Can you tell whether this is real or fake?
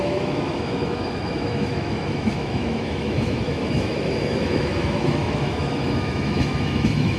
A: fake